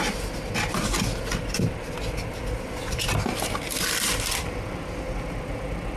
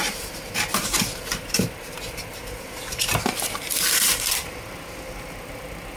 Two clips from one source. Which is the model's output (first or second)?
second